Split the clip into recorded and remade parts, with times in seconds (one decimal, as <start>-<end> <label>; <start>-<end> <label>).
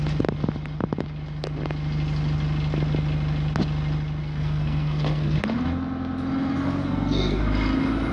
0.0-4.2 recorded; 4.2-5.4 remade; 5.4-6.8 recorded; 6.8-7.4 remade; 7.4-8.1 recorded